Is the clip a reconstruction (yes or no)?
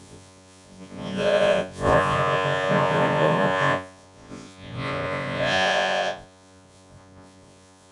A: yes